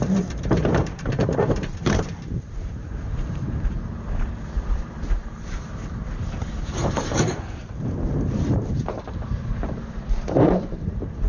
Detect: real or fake fake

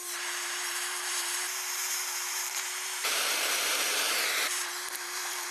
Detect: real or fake fake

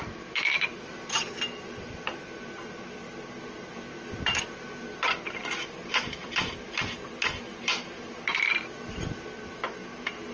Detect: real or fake fake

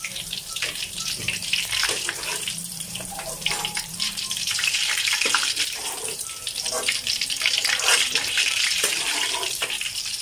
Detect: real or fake fake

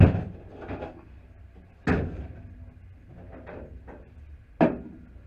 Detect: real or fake real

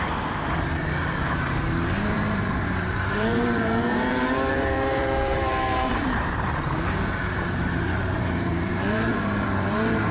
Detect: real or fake fake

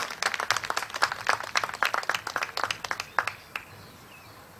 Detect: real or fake real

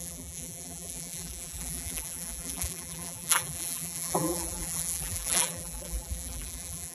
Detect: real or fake fake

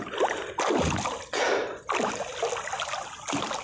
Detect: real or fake real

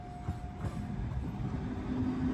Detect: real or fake real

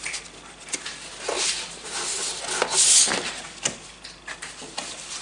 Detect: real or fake real